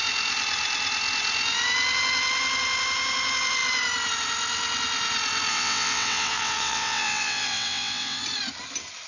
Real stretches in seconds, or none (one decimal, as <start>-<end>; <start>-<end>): 0.0-5.5; 8.2-9.1